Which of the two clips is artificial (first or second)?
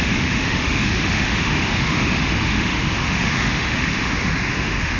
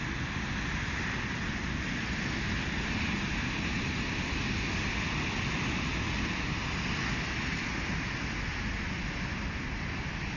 first